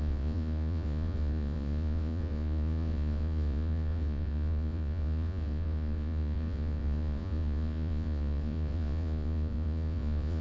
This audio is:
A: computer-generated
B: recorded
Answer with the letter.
A